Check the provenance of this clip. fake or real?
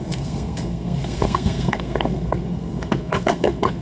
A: fake